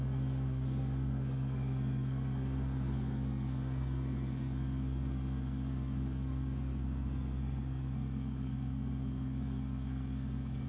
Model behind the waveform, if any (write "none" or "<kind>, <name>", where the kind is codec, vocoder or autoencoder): codec, SNAC